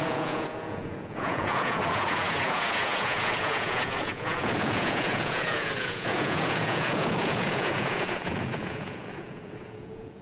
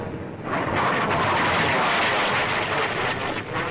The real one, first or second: second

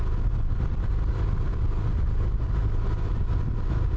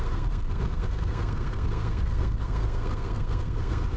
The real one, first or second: first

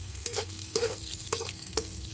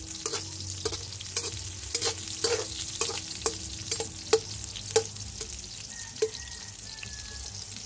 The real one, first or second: second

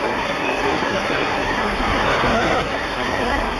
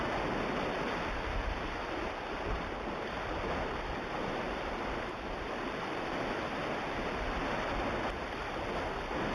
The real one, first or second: second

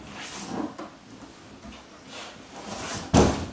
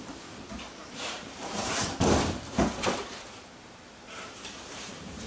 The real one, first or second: first